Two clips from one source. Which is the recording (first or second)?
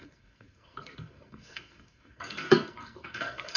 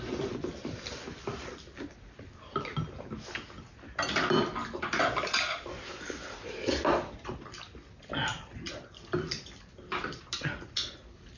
second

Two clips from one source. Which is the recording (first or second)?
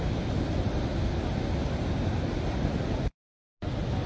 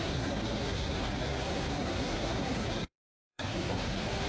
first